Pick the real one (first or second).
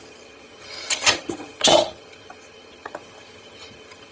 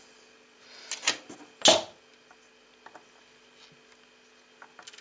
second